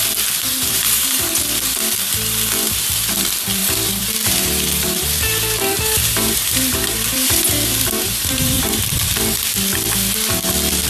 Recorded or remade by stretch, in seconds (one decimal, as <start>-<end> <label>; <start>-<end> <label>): 0.0-0.5 recorded; 0.5-1.3 remade; 1.3-3.6 recorded; 3.6-8.7 remade; 8.7-10.9 recorded